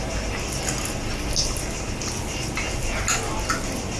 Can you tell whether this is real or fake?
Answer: real